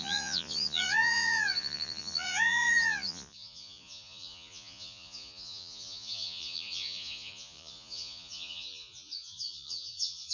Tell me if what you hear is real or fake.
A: fake